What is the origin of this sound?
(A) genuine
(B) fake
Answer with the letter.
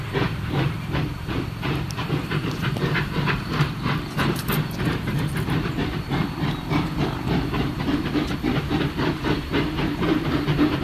B